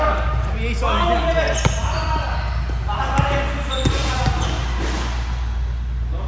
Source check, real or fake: real